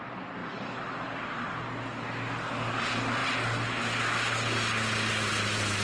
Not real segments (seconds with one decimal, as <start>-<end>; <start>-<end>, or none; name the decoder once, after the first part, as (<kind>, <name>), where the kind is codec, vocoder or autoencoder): 0.0-0.4 (vocoder, BigVGAN v2); 2.8-3.2; 5.1-5.8